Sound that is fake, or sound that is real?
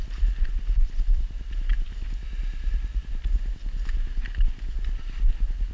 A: real